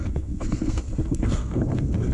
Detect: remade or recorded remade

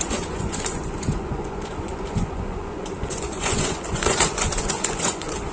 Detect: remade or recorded remade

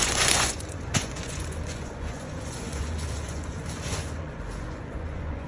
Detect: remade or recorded remade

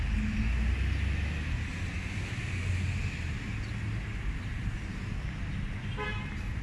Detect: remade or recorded recorded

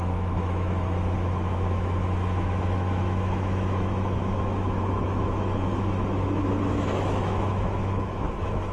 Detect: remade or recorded remade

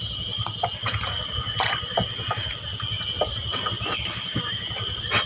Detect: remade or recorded recorded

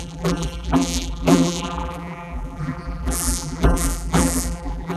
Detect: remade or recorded remade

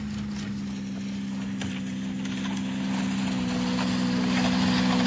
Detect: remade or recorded recorded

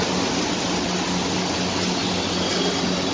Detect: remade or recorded recorded